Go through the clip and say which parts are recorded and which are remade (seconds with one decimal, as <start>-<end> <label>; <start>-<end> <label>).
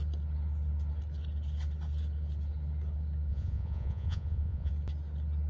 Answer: 0.0-3.3 recorded; 3.3-4.7 remade; 4.7-5.5 recorded